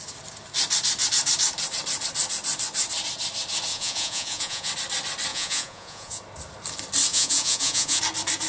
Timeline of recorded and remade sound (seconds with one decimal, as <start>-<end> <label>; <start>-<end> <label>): 0.0-3.7 recorded; 3.7-4.7 remade; 4.7-5.3 recorded; 5.3-6.2 remade; 6.2-7.1 recorded; 7.1-8.0 remade; 8.0-8.5 recorded